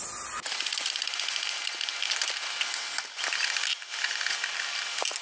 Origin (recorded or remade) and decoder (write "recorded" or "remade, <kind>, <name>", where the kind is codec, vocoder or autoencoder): recorded